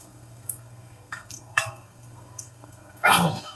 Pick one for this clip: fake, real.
fake